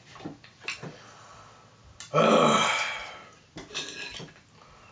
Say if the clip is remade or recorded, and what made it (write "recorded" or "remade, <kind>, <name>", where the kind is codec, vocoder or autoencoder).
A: recorded